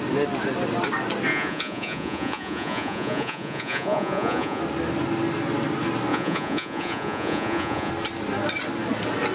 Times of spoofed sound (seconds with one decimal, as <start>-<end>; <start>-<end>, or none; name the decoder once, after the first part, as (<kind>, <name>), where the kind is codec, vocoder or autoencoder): 1.3-4.6 (vocoder, Vocos); 6.1-7.9